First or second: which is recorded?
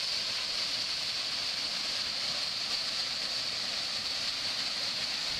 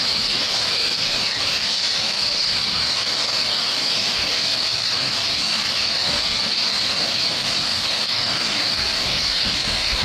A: first